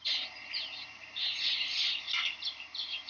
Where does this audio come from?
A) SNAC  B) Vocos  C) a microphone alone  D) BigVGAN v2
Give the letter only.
D